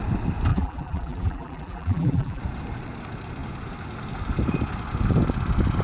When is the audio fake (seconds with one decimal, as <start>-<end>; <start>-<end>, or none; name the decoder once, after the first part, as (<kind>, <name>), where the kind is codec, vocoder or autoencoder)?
0.5-2.4 (vocoder, BigVGAN v2)